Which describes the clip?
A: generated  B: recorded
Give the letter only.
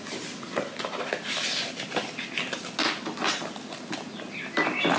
B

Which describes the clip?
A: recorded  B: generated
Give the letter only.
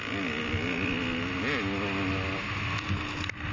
A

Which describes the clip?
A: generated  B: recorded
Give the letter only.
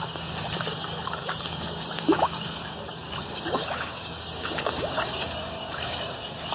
A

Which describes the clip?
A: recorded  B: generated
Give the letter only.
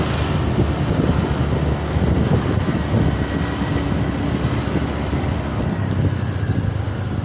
A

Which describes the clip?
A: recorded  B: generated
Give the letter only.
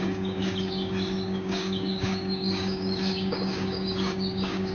B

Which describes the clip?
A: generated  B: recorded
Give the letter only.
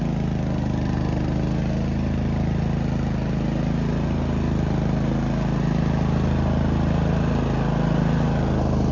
B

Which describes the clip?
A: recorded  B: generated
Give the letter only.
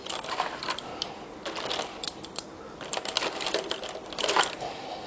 A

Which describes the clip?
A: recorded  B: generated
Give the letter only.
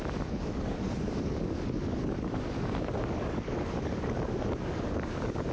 B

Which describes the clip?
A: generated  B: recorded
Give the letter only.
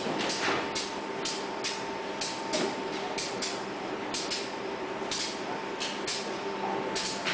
B